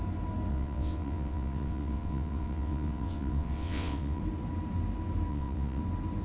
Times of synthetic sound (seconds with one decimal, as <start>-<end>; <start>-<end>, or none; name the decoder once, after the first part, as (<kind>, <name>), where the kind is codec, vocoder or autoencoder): 0.5-4.2 (vocoder, WaveNeXt); 5.3-5.8